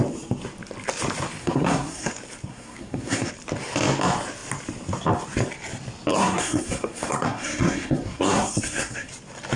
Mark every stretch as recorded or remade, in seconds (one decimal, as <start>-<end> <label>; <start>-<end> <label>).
0.0-1.4 recorded; 1.4-2.1 remade; 2.1-2.5 recorded; 2.5-3.3 remade; 3.3-6.1 recorded; 6.1-9.1 remade; 9.1-9.6 recorded